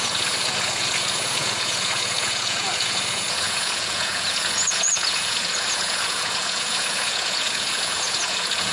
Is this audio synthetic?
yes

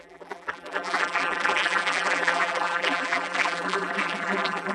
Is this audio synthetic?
yes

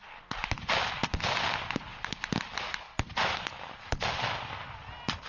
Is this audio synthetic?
no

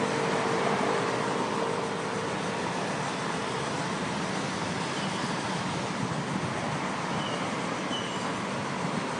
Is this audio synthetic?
no